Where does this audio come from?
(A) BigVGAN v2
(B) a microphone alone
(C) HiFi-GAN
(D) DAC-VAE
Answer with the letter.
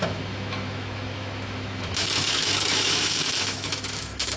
D